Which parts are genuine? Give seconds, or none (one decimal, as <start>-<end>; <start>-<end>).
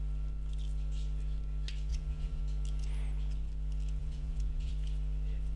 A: 0.0-1.9; 2.4-4.0; 4.7-5.6